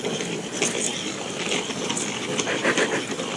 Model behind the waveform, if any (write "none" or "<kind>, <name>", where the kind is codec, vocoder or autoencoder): none